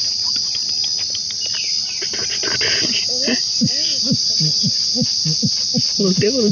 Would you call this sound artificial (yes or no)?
no